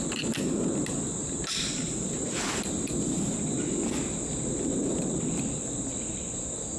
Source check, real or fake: real